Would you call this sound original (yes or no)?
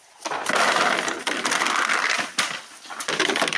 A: yes